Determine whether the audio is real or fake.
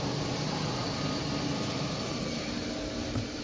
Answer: real